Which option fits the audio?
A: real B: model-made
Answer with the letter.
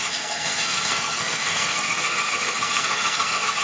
B